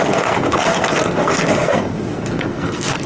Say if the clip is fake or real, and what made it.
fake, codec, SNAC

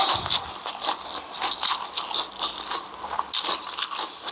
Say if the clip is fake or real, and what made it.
real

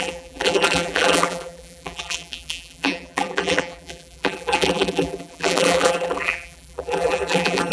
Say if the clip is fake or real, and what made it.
fake, vocoder, BigVGAN v2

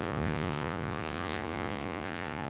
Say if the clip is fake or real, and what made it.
fake, vocoder, Vocos